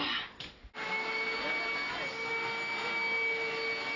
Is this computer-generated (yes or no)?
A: no